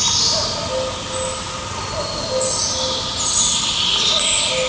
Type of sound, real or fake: real